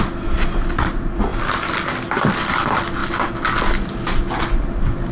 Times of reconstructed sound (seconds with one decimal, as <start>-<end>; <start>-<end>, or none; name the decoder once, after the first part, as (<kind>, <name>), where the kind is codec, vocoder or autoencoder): none